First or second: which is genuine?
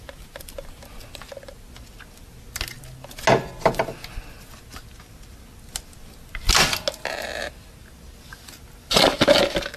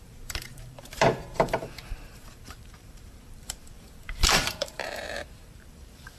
first